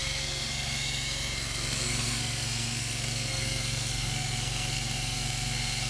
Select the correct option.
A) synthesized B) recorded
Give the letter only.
A